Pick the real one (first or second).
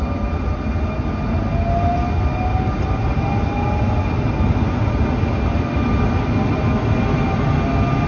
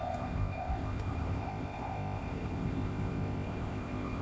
first